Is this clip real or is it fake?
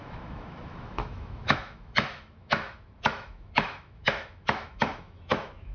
fake